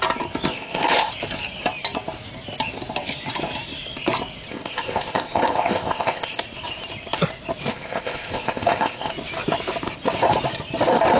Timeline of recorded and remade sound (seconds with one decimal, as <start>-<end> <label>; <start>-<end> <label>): 0.0-0.5 recorded; 0.5-1.1 remade; 1.1-4.5 recorded; 4.5-6.4 remade; 6.4-7.7 recorded; 7.7-9.1 remade; 9.1-11.2 recorded